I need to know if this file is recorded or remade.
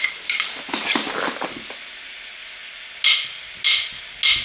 recorded